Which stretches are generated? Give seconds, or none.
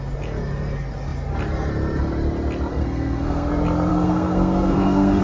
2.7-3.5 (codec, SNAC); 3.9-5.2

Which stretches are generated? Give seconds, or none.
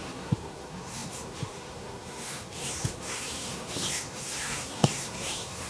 0.0-5.7 (codec, SNAC)